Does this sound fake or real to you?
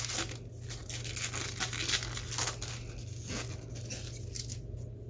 real